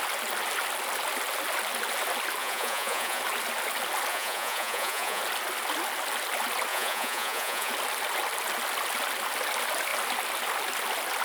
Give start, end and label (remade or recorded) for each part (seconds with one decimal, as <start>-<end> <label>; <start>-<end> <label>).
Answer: 0.0-2.4 recorded; 2.4-3.2 remade; 3.2-4.1 recorded; 4.1-5.2 remade; 5.2-6.7 recorded; 6.7-7.7 remade; 7.7-11.2 recorded